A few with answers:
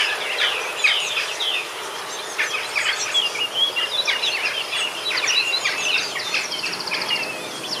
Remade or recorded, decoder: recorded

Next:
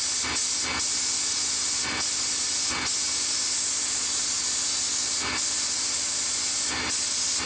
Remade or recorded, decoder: recorded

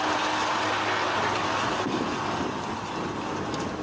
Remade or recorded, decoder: recorded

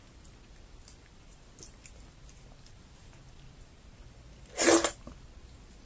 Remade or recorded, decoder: recorded